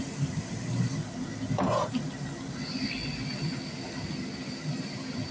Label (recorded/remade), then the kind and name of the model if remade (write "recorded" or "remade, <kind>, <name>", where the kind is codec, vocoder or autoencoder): recorded